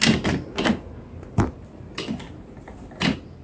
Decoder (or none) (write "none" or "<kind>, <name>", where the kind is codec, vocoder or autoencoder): none